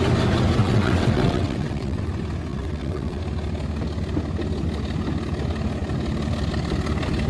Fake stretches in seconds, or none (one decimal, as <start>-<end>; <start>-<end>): 0.6-2.1; 2.5-3.2